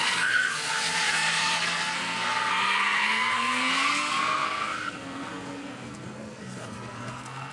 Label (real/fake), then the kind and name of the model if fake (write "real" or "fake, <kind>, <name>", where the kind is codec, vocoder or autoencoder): fake, codec, SNAC